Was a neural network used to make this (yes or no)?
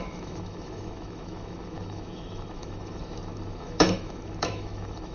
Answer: yes